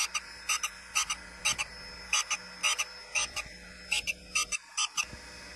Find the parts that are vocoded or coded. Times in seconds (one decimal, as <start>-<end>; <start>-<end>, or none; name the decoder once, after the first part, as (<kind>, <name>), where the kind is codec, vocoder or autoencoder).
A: none